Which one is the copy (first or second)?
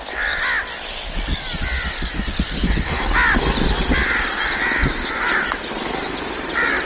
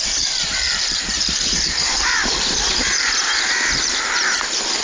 second